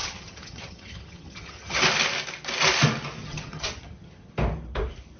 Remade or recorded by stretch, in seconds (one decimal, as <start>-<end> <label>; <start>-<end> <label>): 0.0-1.8 remade; 1.8-3.2 recorded; 3.2-4.3 remade; 4.3-5.2 recorded